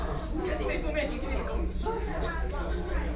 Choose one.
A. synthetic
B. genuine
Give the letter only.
B